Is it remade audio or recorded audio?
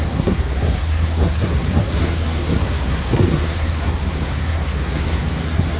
remade